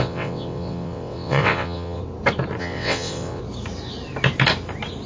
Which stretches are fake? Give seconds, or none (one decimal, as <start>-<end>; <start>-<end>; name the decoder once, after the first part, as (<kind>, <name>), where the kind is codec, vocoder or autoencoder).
0.0-2.0 (vocoder, WaveNeXt); 2.6-3.4